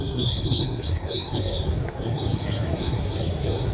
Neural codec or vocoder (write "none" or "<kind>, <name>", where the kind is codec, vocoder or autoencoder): codec, SNAC